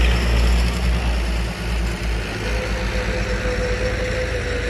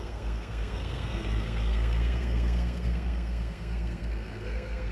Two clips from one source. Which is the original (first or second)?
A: first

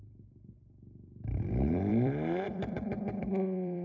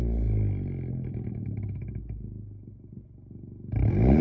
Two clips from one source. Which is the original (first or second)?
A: second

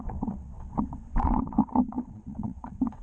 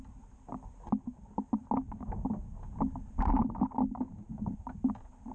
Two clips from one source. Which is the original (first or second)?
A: second